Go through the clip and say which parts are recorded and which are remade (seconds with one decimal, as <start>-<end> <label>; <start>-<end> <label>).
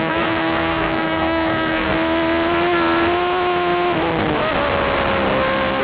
0.0-1.9 remade; 1.9-5.8 recorded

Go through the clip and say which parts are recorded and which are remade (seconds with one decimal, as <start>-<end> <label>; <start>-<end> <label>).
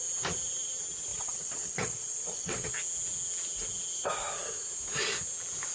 0.0-1.1 recorded; 1.1-2.7 remade; 2.7-5.7 recorded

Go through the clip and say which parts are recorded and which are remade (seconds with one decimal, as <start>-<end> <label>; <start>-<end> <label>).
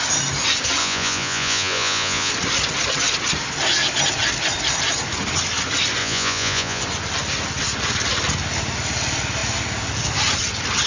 0.0-0.8 recorded; 0.8-2.3 remade; 2.3-6.0 recorded; 6.0-6.8 remade; 6.8-10.9 recorded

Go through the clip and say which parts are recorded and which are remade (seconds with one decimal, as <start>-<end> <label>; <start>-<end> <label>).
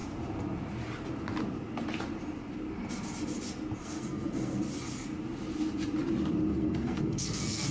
0.0-3.8 recorded; 3.8-4.6 remade; 4.6-6.5 recorded; 6.5-7.7 remade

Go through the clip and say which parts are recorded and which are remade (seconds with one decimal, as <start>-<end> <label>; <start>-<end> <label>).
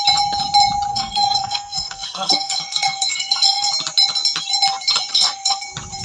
0.0-0.9 recorded; 0.9-3.7 remade; 3.7-5.1 recorded; 5.1-5.6 remade; 5.6-6.0 recorded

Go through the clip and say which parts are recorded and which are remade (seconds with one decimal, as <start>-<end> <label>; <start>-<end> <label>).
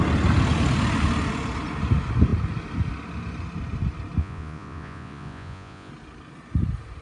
0.0-4.2 recorded; 4.2-5.9 remade; 5.9-7.0 recorded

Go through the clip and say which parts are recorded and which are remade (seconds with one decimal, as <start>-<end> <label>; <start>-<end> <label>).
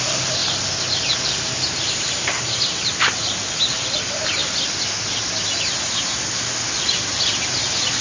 0.0-4.4 remade; 4.4-7.6 recorded; 7.6-8.0 remade